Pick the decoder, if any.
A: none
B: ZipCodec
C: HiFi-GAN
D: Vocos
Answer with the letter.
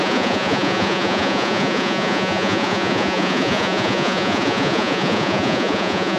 D